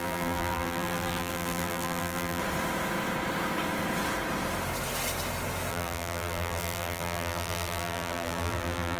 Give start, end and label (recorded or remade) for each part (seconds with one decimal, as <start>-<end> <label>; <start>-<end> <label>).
0.0-2.4 remade; 2.4-5.7 recorded; 5.7-9.0 remade

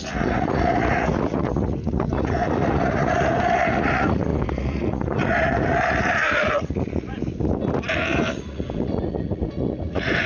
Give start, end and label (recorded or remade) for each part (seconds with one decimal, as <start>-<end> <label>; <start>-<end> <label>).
0.0-10.3 remade

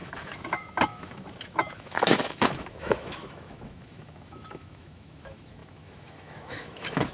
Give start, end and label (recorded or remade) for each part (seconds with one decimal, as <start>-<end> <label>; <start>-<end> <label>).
0.0-7.1 remade

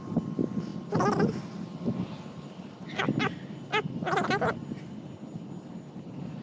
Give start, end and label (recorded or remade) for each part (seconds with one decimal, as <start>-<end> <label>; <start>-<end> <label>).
0.0-6.4 recorded

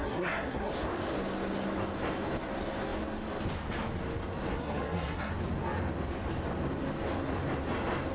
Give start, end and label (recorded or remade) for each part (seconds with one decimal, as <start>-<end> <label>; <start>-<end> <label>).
0.0-0.7 remade; 0.7-4.5 recorded; 4.5-5.3 remade; 5.3-8.1 recorded

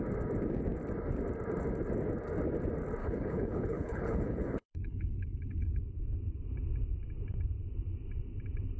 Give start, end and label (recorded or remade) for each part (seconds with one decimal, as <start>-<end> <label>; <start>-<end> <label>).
0.0-3.0 recorded; 3.0-5.8 remade; 5.8-8.8 recorded

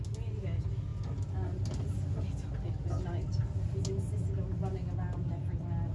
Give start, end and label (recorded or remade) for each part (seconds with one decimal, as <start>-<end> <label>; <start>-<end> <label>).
0.0-5.9 recorded

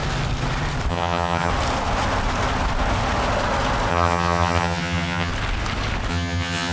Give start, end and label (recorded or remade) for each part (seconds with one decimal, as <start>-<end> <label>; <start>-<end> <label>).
0.0-0.9 recorded; 0.9-1.5 remade; 1.5-3.9 recorded; 3.9-5.3 remade; 5.3-6.1 recorded; 6.1-6.7 remade